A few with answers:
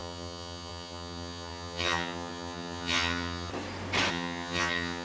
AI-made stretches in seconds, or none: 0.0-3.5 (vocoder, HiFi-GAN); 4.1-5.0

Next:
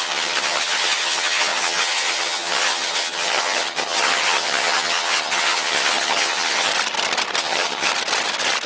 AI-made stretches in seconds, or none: 0.0-6.7 (vocoder, HiFi-GAN); 7.4-7.9

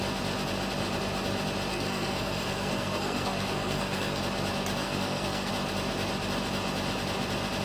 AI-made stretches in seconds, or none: 1.7-4.2 (codec, SNAC); 4.8-5.5

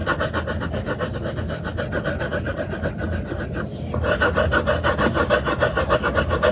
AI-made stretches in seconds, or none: none

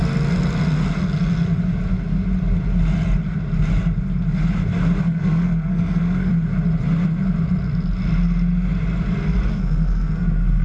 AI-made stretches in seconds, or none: 5.0-6.3 (codec, SNAC); 9.5-10.6